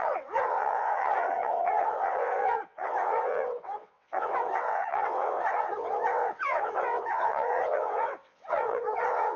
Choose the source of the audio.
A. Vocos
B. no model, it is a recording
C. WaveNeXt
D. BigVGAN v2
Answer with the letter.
C